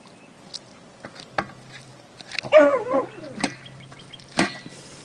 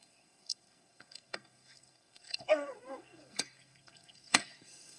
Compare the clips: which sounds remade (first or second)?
second